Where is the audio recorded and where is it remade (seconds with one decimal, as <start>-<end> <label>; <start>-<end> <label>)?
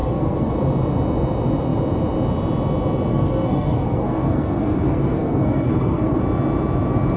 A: 0.0-0.5 remade; 0.5-3.1 recorded; 3.1-6.2 remade; 6.2-7.2 recorded